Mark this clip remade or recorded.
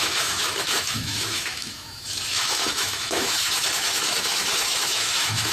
remade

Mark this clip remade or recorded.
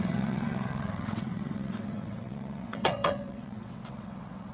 remade